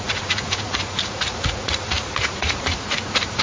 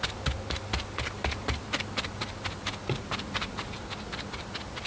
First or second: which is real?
second